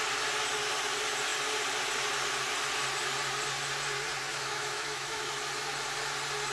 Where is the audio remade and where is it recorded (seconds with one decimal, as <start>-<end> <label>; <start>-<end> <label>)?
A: 0.0-4.3 recorded; 4.3-5.3 remade; 5.3-6.5 recorded